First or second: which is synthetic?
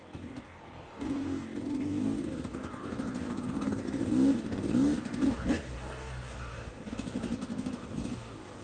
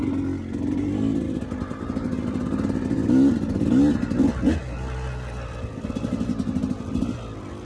first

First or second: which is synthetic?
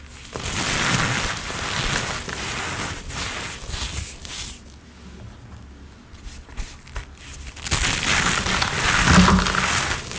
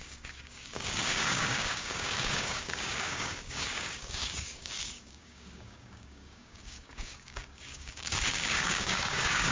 second